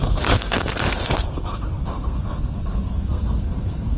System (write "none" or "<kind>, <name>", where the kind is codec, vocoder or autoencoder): codec, SNAC